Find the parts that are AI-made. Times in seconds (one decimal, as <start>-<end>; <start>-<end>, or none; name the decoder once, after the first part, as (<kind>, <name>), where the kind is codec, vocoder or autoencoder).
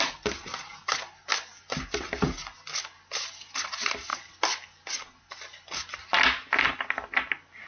none